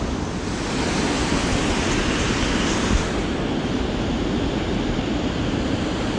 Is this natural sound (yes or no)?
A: yes